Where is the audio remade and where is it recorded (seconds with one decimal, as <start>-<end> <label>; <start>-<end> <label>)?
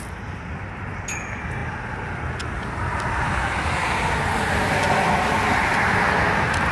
0.0-5.7 recorded; 5.7-6.7 remade